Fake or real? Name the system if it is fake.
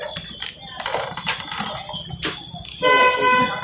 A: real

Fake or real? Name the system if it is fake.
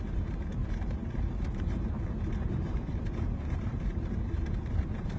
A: fake, vocoder, BigVGAN v2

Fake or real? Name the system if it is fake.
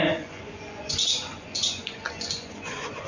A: fake, vocoder, Vocos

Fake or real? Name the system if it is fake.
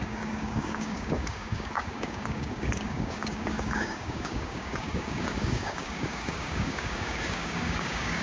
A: fake, codec, DAC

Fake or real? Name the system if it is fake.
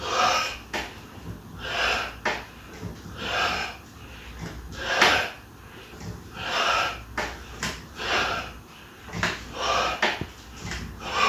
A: real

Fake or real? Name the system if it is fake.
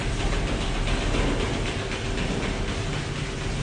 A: real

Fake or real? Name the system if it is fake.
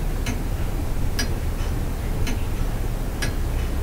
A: real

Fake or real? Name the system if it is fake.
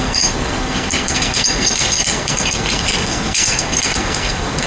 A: fake, codec, SNAC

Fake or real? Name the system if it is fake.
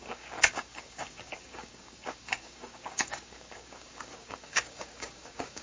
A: fake, codec, DAC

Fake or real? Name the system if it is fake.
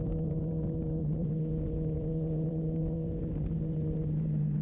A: fake, vocoder, BigVGAN v2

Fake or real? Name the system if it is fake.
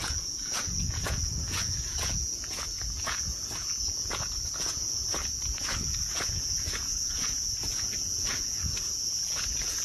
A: fake, vocoder, Vocos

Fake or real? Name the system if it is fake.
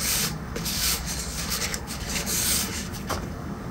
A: fake, codec, DAC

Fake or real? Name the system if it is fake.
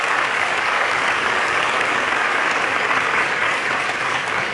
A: fake, codec, DAC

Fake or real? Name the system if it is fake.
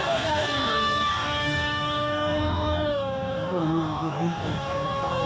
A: fake, codec, DAC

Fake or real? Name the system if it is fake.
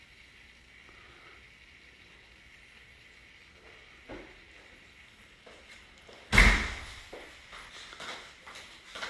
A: real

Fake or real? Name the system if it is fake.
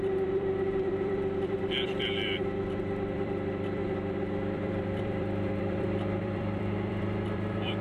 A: fake, vocoder, BigVGAN v2